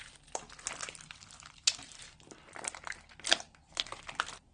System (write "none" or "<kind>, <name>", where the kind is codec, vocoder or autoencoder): none